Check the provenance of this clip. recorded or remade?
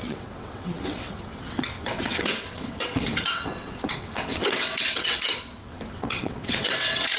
remade